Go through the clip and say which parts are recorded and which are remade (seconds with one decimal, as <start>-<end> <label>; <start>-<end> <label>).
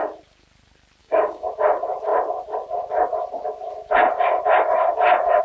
0.0-1.0 recorded; 1.0-1.5 remade; 1.5-5.4 recorded